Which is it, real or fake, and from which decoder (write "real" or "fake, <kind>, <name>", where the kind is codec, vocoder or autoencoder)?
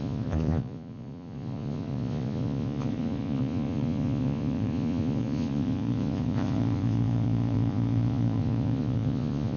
fake, vocoder, Vocos